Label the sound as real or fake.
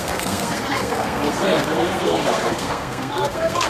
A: fake